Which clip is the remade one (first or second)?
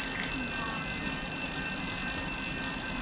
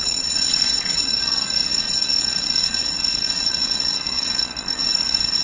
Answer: second